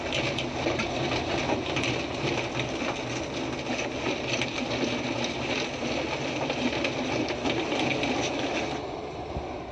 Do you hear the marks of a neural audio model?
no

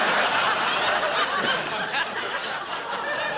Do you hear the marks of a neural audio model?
no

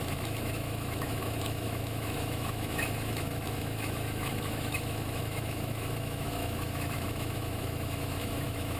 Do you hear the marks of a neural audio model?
yes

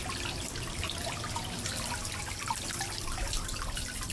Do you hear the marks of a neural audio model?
no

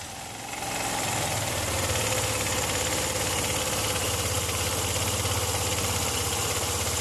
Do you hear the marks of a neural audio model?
no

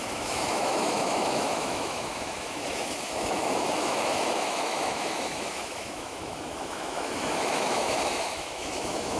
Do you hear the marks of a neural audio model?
yes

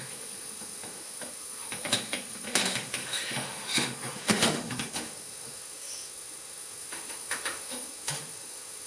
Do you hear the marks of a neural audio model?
yes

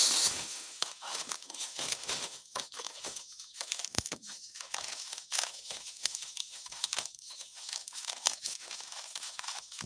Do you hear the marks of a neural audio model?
yes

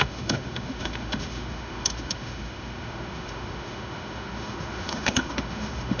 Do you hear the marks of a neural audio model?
yes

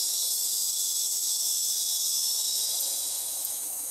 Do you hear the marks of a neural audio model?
yes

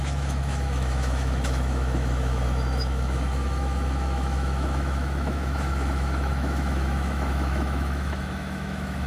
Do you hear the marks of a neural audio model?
yes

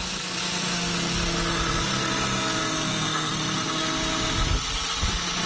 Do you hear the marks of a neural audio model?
no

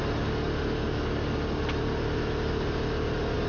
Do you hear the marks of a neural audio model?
no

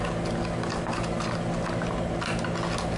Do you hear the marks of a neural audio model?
no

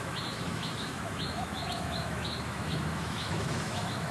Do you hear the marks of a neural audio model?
yes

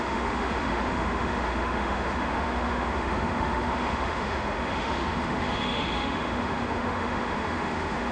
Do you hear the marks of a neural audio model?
yes